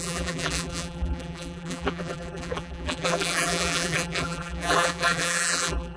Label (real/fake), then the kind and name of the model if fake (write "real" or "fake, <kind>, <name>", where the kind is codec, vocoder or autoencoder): fake, vocoder, BigVGAN v2